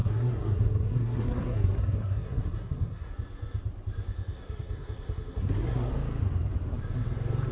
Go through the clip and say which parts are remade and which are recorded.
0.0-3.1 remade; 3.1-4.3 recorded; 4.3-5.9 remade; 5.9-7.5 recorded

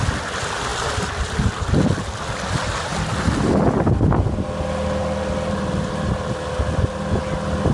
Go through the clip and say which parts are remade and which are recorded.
0.0-7.7 recorded

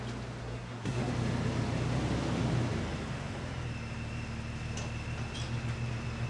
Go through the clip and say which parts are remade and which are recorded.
0.0-0.4 recorded; 0.4-1.1 remade; 1.1-6.3 recorded

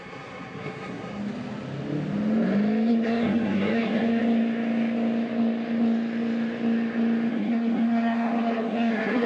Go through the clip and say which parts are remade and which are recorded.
0.0-1.2 remade; 1.2-2.9 recorded; 2.9-4.2 remade; 4.2-7.3 recorded; 7.3-9.3 remade

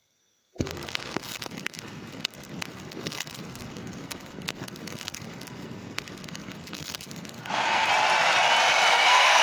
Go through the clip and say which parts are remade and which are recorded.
0.0-7.9 remade; 7.9-8.9 recorded; 8.9-9.4 remade

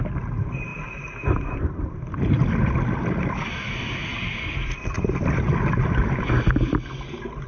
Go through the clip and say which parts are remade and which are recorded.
0.0-7.5 recorded